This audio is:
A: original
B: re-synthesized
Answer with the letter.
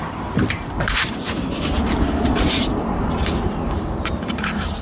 B